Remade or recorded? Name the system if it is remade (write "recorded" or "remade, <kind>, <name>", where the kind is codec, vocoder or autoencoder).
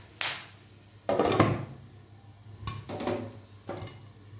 recorded